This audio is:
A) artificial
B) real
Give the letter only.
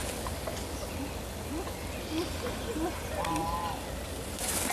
B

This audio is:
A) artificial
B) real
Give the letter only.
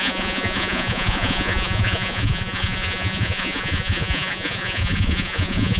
A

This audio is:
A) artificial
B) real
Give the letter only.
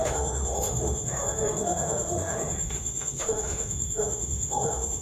A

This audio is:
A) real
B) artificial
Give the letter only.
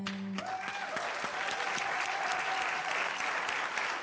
A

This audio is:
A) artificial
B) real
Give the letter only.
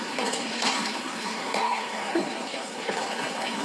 A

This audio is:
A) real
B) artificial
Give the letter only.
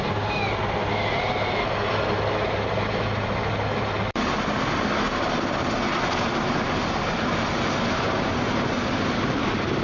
A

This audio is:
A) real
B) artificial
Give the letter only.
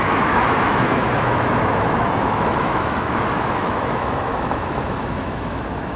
B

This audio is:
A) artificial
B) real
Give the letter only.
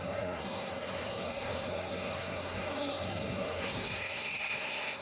A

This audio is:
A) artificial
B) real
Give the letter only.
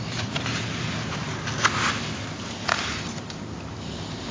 B